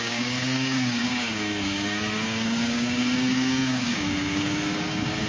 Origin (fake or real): fake